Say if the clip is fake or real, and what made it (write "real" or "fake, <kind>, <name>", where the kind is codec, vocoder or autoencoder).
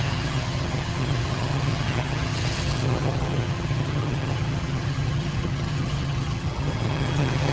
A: fake, vocoder, HiFi-GAN